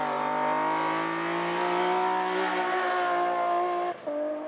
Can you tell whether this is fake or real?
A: real